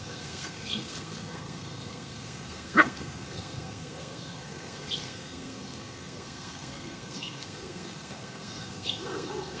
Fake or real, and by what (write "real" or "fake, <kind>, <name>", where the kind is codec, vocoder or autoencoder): fake, codec, SNAC